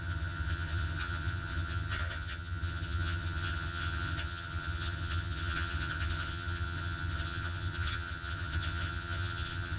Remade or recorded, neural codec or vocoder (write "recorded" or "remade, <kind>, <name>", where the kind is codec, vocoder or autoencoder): remade, vocoder, HiFi-GAN